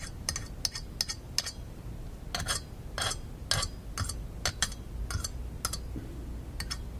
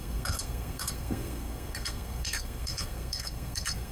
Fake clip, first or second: second